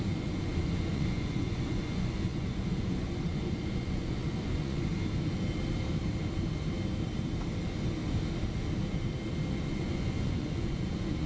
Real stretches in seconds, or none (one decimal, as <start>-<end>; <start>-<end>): 4.9-9.6

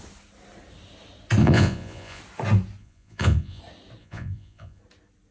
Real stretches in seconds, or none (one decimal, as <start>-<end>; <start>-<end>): 0.0-1.4; 2.2-2.8; 3.6-4.0; 4.8-5.3